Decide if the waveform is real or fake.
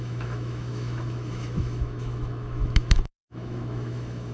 fake